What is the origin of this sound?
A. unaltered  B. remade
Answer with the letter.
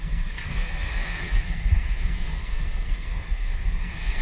B